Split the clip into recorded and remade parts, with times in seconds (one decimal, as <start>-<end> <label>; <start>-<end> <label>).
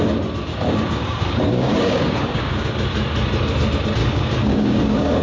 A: 0.0-0.5 recorded; 0.5-2.7 remade; 2.7-4.0 recorded; 4.0-5.2 remade